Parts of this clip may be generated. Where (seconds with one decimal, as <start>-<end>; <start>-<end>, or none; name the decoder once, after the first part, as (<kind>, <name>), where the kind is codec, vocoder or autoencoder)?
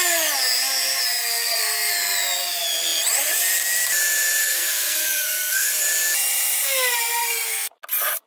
1.3-1.9 (codec, SNAC); 4.4-5.7; 7.2-7.7